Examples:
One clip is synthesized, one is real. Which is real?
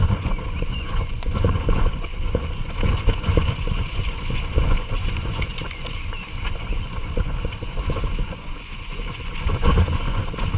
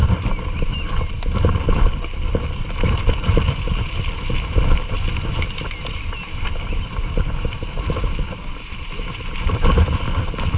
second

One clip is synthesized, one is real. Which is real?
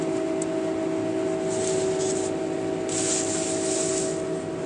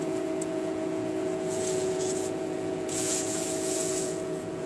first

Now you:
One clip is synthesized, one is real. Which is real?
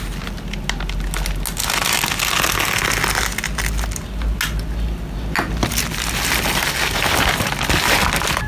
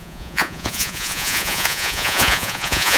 first